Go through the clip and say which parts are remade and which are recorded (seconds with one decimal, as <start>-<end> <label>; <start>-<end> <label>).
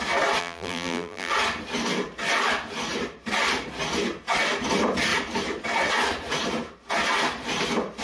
0.0-0.4 recorded; 0.4-1.3 remade; 1.3-8.0 recorded